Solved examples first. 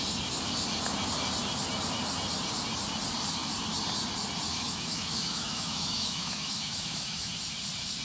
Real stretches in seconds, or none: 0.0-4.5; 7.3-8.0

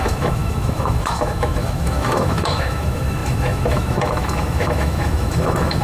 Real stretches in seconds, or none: none

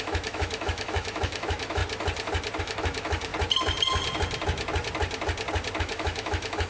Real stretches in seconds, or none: 1.8-2.6; 3.3-5.8

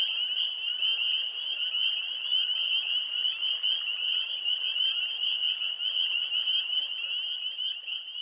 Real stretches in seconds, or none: 0.0-8.2